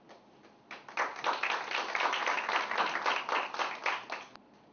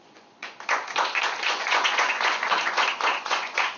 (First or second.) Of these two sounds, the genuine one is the first